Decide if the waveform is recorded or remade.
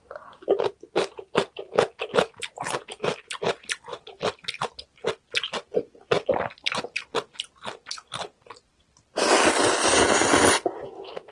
recorded